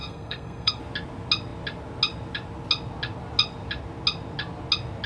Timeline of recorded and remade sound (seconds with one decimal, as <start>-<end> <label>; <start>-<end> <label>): 0.0-0.8 remade; 0.8-5.1 recorded